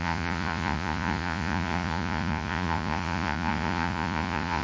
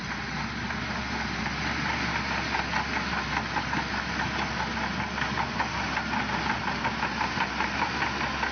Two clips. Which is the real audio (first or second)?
second